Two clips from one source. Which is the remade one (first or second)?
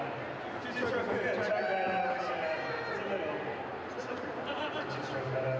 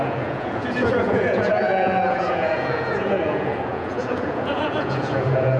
second